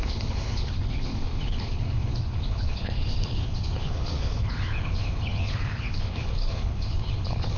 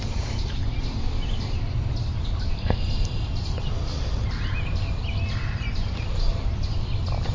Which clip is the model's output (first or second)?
first